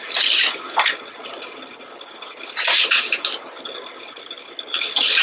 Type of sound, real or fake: real